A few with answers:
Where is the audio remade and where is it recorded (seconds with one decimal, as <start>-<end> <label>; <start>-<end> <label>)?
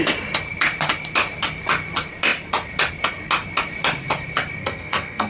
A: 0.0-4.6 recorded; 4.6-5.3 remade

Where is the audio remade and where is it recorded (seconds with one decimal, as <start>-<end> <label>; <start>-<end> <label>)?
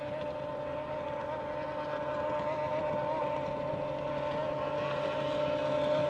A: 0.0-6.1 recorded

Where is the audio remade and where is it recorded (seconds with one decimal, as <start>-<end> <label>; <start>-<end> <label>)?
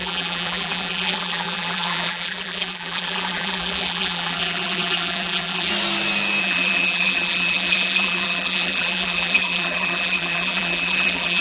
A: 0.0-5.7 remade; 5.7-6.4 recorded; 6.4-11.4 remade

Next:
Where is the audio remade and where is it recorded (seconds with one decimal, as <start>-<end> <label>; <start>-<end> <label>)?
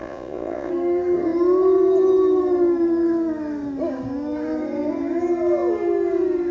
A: 0.0-0.7 remade; 0.7-6.5 recorded